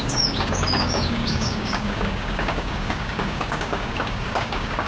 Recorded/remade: remade